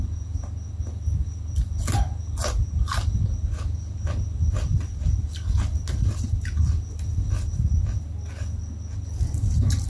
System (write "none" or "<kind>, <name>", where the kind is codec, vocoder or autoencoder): none